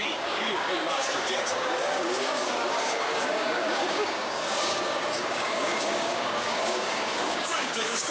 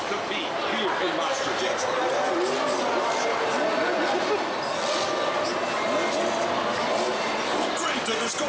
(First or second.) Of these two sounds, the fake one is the first